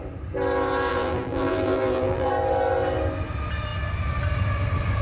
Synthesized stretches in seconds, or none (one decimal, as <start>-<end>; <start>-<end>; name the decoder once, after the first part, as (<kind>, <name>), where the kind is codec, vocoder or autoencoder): 0.9-2.3 (vocoder, BigVGAN v2)